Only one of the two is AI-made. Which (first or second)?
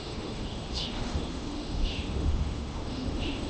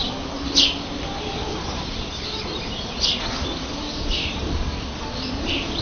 first